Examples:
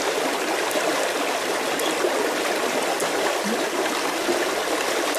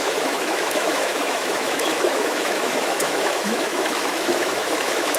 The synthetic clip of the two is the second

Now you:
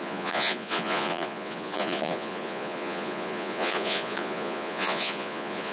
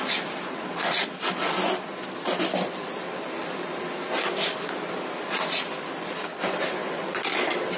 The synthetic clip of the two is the first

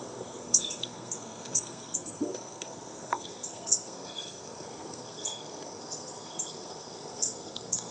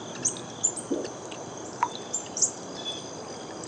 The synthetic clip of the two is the first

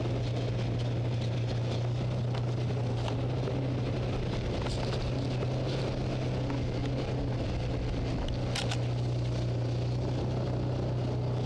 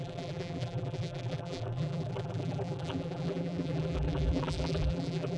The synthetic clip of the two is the second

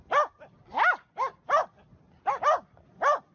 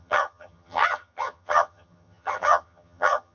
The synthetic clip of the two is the second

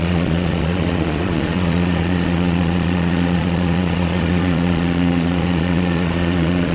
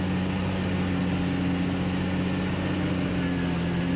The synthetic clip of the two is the first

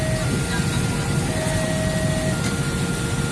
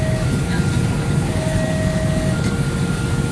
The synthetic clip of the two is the second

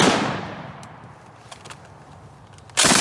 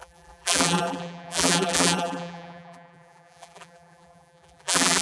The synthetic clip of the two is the second